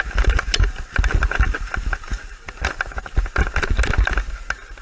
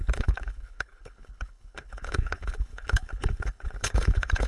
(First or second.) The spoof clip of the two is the second